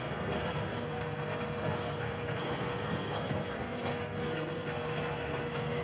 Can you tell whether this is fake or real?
fake